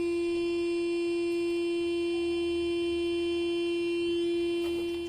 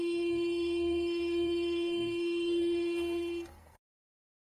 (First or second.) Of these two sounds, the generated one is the second